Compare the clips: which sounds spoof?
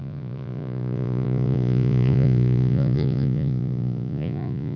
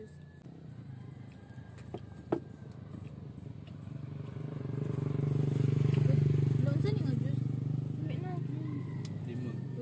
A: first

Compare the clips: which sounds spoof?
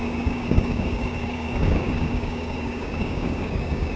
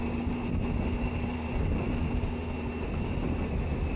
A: first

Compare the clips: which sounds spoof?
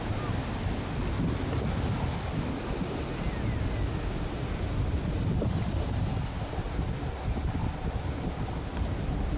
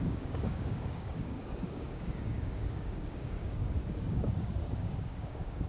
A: second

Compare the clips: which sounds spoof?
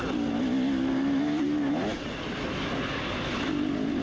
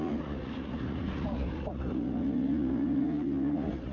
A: second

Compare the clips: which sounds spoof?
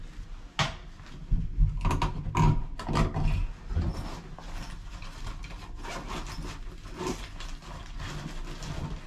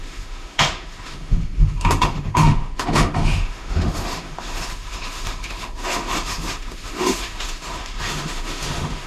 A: second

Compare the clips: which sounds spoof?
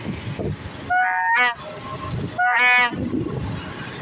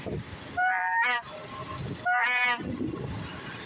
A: second